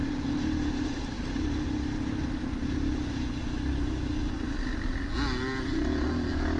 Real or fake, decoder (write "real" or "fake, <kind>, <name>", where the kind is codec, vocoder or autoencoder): real